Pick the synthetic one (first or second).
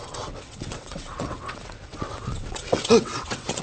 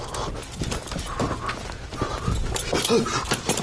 first